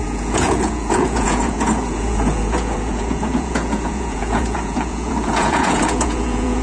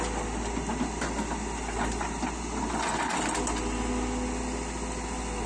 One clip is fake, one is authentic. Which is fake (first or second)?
first